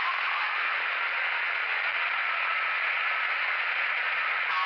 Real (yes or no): no